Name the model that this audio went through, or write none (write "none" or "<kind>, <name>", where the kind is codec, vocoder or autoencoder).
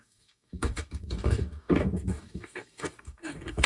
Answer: codec, DAC